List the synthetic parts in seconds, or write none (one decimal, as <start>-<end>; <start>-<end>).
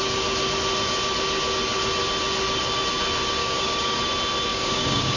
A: 3.4-4.0; 4.5-5.2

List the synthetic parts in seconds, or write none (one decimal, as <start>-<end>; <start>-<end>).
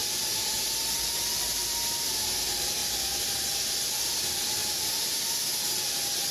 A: none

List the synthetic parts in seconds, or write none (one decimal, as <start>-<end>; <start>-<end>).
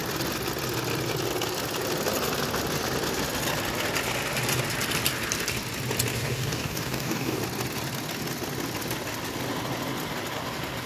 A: 6.1-7.4